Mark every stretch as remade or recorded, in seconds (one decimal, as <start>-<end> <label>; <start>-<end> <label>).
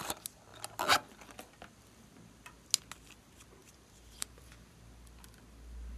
0.0-3.6 recorded; 3.6-4.8 remade; 4.8-6.0 recorded